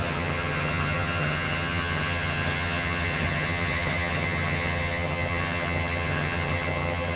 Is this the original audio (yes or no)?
no